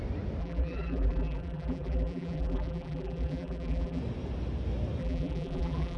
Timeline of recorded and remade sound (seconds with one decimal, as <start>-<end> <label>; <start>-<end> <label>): 0.0-0.4 recorded; 0.4-4.0 remade; 4.0-5.0 recorded; 5.0-6.0 remade